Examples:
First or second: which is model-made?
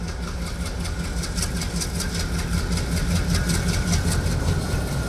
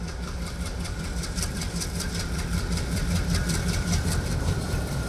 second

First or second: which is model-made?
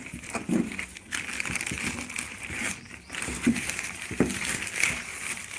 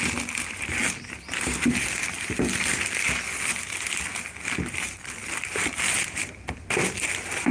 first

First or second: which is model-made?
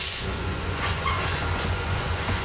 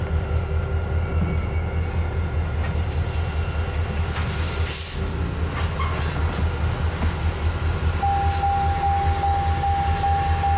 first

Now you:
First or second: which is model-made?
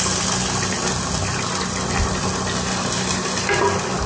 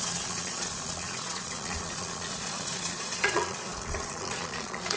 second